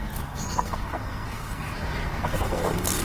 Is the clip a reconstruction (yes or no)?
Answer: yes